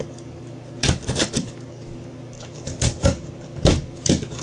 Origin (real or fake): fake